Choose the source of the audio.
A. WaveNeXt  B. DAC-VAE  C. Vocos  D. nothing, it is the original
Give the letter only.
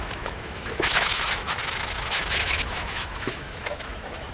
B